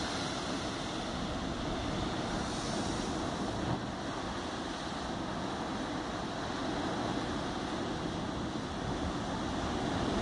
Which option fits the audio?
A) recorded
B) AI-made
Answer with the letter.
A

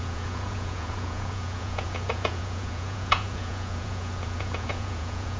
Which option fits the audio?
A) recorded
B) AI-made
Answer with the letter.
B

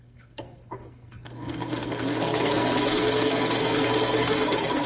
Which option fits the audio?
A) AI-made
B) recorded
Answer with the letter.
A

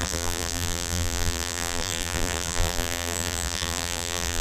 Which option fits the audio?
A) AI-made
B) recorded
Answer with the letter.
A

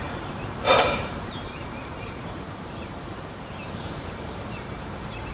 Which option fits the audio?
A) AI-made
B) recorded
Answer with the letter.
A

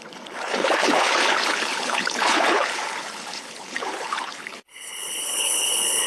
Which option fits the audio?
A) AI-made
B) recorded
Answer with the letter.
A